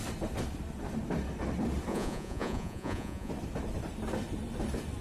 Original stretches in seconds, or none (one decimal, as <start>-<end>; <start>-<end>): 0.0-1.9; 3.3-5.0